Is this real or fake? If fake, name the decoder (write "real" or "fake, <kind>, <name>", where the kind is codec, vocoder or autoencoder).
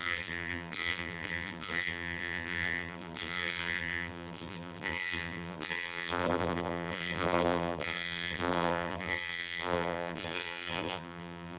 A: fake, vocoder, BigVGAN v2